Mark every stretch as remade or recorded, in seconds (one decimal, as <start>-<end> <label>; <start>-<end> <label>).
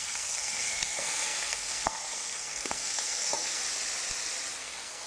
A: 0.0-3.6 remade; 3.6-4.6 recorded; 4.6-5.1 remade